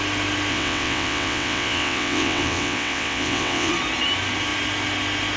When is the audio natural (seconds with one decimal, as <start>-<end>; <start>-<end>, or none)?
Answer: 0.0-0.5; 3.7-5.4